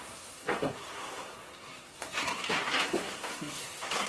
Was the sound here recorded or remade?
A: remade